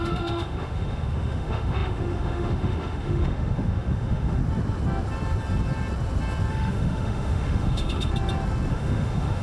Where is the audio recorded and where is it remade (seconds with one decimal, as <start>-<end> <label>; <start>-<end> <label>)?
0.0-4.4 remade; 4.4-6.5 recorded; 6.5-8.1 remade; 8.1-8.7 recorded; 8.7-9.4 remade